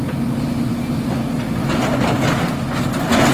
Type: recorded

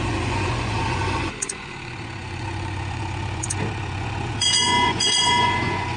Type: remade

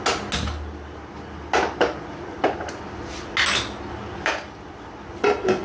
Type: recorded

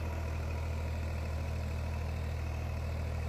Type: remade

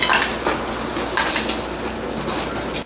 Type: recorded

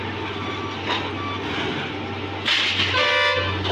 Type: recorded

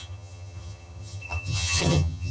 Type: remade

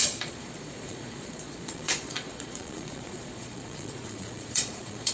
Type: remade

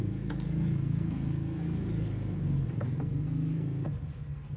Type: remade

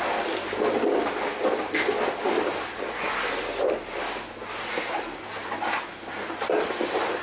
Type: recorded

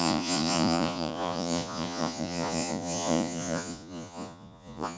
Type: remade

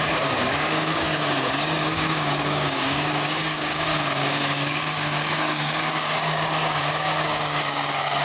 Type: remade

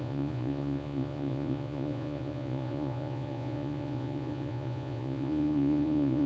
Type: remade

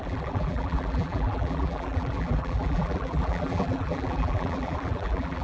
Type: remade